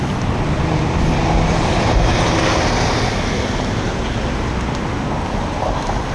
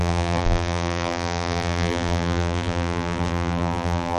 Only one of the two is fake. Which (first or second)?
second